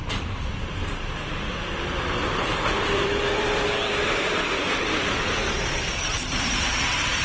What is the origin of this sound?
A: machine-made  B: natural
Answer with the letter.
A